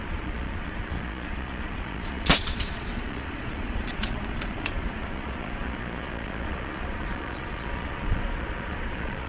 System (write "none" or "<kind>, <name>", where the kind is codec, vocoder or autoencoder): vocoder, Vocos